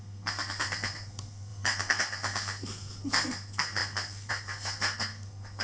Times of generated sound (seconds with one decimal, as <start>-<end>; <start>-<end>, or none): 0.0-5.6